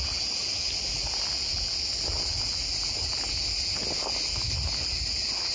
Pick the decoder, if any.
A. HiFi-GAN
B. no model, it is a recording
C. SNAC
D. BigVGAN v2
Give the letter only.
B